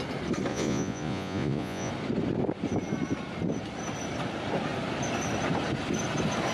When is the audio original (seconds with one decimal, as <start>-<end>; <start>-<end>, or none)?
0.0-0.5; 1.9-6.5